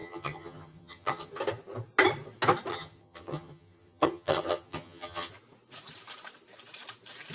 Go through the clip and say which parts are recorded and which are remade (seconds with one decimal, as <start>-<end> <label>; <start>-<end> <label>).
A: 0.0-1.3 remade; 1.3-2.7 recorded; 2.7-5.3 remade; 5.3-7.3 recorded

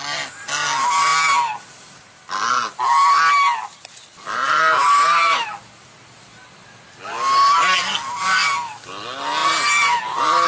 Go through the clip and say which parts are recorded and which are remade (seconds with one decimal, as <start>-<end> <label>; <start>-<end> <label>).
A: 0.0-10.5 recorded